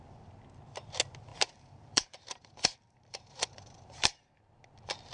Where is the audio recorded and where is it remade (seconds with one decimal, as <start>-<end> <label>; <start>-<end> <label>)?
0.0-1.3 recorded; 1.3-4.4 remade; 4.4-5.1 recorded